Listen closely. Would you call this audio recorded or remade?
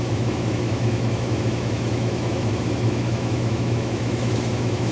remade